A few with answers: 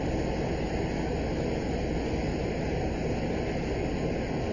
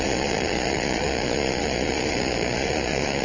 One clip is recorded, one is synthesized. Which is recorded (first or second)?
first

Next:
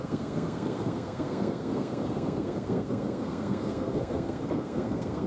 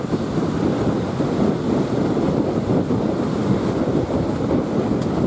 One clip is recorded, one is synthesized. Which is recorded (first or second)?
second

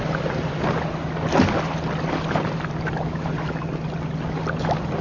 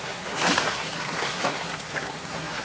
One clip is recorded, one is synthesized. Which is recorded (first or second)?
first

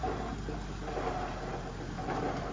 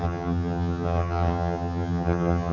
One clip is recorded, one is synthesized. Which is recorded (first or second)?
first